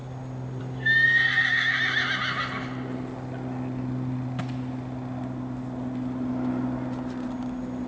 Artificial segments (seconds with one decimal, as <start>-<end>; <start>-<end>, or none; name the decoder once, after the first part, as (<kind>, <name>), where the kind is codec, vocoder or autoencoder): none